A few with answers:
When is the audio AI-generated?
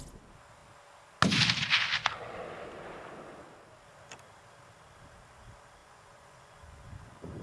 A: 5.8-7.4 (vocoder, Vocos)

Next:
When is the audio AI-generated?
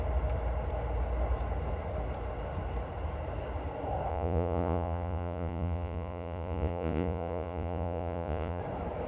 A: 4.1-8.6 (vocoder, Vocos)